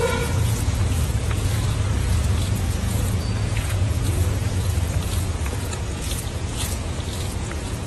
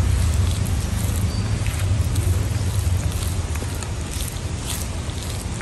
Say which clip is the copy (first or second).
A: first